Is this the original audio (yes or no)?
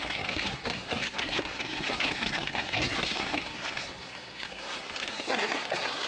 no